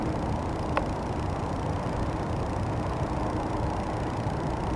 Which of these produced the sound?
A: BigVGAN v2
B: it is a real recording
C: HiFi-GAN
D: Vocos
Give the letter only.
A